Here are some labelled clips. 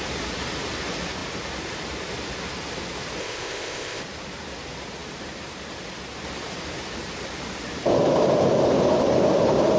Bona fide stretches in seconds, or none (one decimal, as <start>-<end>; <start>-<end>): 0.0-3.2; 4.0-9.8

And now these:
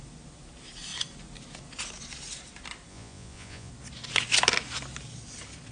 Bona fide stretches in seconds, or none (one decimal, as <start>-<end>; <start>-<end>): 0.0-2.9; 3.7-5.7

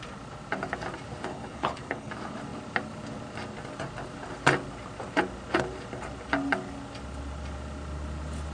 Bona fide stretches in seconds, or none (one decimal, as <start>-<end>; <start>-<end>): 0.0-1.3; 2.1-8.5